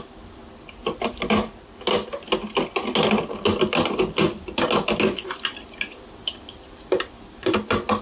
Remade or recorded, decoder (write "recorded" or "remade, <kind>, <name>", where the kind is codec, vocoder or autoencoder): recorded